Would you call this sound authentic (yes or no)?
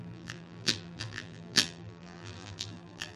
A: no